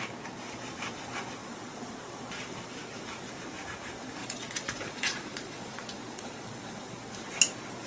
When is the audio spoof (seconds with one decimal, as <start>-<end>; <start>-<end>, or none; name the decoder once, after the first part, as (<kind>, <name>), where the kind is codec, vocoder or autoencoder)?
1.4-2.0 (vocoder, Vocos); 4.2-7.0